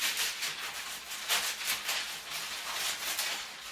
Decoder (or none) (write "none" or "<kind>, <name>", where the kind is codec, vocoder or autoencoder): none